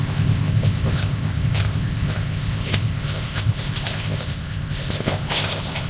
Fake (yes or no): yes